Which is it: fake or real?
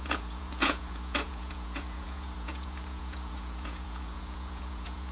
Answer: fake